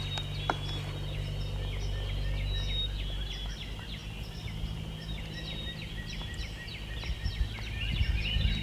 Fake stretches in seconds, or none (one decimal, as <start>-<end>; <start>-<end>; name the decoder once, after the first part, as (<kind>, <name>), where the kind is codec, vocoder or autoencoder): none